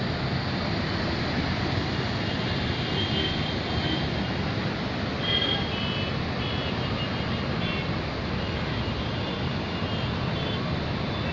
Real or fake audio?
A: real